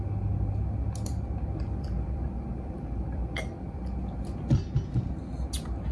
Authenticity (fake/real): real